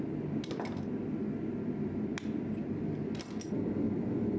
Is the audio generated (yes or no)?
no